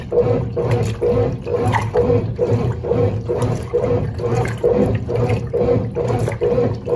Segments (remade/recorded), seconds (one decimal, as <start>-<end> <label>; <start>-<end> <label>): 0.0-1.5 recorded; 1.5-5.6 remade; 5.6-7.0 recorded